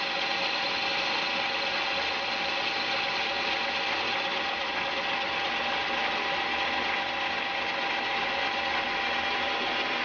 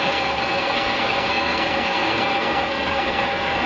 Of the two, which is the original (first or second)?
first